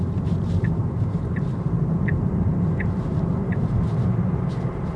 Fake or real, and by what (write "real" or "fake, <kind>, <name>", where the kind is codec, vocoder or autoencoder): fake, vocoder, BigVGAN v2